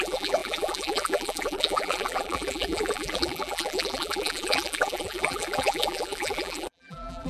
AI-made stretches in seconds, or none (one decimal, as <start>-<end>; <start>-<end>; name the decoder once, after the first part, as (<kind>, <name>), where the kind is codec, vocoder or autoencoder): 0.0-7.3 (vocoder, BigVGAN v2)